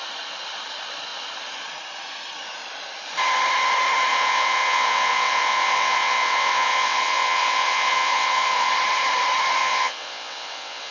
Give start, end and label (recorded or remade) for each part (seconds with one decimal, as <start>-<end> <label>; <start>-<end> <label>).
0.0-4.1 recorded; 4.1-8.7 remade; 8.7-9.6 recorded; 9.6-10.9 remade